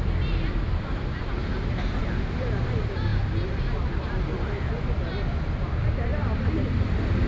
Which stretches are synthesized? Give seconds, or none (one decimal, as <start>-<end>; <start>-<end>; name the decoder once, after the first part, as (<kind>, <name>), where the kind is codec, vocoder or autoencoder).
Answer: 0.0-1.4 (vocoder, BigVGAN v2); 2.0-3.1; 3.9-6.1